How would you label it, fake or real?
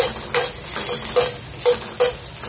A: real